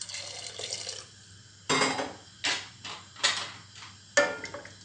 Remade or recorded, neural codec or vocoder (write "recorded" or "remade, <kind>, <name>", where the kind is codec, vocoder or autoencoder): recorded